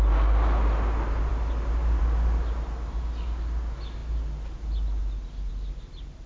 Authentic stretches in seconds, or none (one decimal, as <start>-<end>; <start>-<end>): 0.0-6.3